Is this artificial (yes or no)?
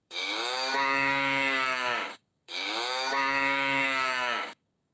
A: yes